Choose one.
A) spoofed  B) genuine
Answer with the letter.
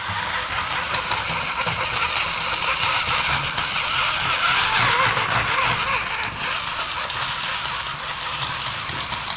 B